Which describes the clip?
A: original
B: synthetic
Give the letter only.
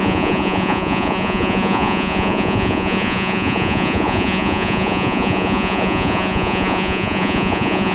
B